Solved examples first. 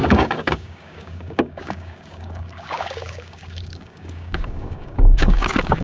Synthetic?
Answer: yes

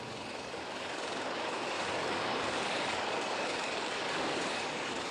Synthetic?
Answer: yes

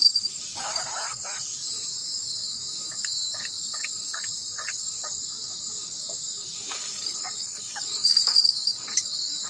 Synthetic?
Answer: yes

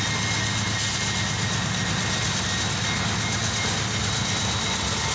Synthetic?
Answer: no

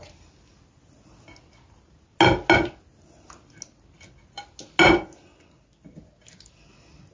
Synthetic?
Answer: no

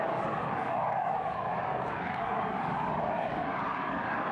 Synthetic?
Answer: yes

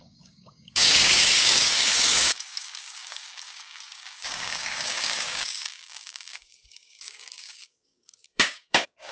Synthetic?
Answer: yes